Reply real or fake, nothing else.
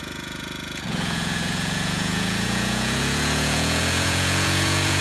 fake